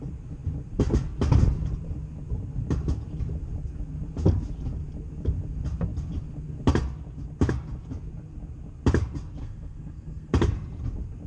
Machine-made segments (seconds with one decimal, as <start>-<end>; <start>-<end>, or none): 9.4-10.3